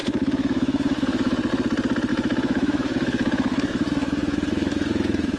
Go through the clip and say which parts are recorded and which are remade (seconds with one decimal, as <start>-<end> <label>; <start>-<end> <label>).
0.0-1.5 remade; 1.5-2.1 recorded; 2.1-5.4 remade